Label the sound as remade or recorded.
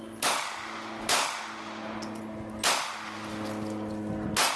recorded